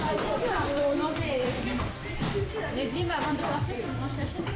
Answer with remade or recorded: remade